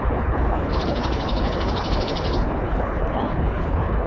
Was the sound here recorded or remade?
remade